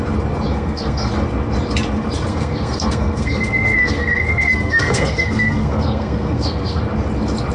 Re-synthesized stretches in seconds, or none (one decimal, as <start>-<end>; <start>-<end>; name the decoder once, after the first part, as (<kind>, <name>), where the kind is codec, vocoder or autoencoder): 0.5-1.1 (codec, SNAC); 2.3-6.8